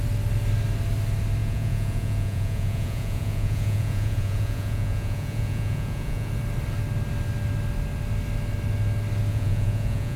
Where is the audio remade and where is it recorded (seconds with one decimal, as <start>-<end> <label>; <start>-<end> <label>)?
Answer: 0.0-1.4 recorded; 1.4-6.3 remade; 6.3-9.3 recorded; 9.3-10.2 remade